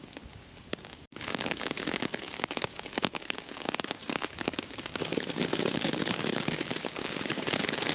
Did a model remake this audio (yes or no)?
yes